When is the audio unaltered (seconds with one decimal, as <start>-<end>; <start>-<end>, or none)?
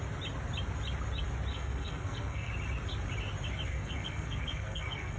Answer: 0.0-1.5; 2.5-3.7